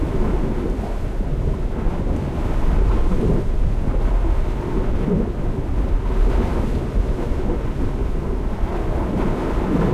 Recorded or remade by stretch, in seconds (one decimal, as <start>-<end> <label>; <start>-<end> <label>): 0.0-9.9 recorded